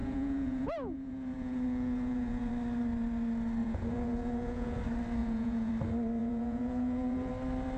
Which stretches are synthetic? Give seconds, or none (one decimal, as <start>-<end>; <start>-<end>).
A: 0.0-2.5; 3.6-4.8; 5.2-5.7; 6.2-7.3